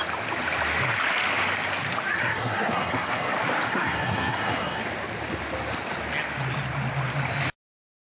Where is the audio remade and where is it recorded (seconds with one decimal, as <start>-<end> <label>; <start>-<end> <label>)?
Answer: 0.0-2.2 recorded; 2.2-3.3 remade; 3.3-3.7 recorded; 3.7-4.8 remade; 4.8-8.2 recorded